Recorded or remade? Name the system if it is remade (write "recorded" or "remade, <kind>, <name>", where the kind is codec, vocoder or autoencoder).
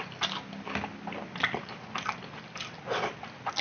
recorded